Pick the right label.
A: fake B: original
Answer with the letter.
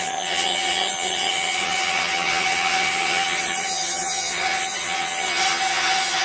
A